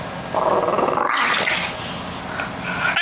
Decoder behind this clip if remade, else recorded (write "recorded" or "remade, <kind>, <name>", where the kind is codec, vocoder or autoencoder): recorded